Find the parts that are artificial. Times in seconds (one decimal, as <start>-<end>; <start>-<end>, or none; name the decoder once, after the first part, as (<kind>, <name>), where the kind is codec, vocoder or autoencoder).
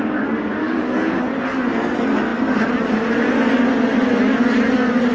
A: 0.6-1.2 (codec, DAC)